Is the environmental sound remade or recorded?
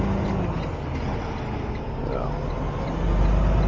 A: recorded